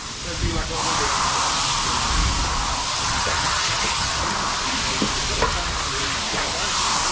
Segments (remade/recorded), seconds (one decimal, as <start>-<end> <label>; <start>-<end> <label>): 0.0-2.8 recorded; 2.8-4.2 remade; 4.2-7.1 recorded